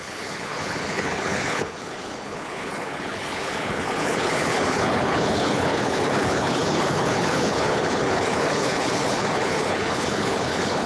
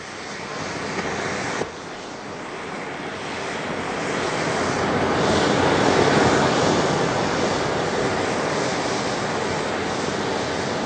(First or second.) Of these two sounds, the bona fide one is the second